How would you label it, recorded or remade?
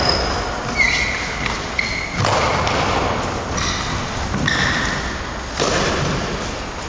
recorded